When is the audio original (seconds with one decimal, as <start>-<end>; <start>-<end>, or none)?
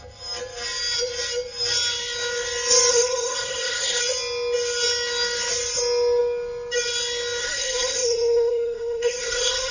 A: 0.0-2.9; 4.0-7.4